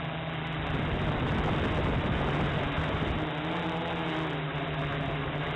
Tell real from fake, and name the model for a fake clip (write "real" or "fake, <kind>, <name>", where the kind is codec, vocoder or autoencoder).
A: real